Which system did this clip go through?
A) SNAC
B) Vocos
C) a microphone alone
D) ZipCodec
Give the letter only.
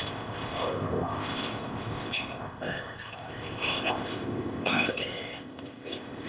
D